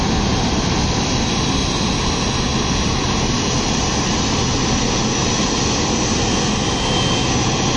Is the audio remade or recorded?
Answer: recorded